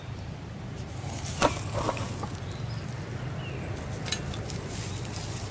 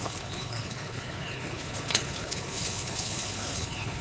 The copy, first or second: second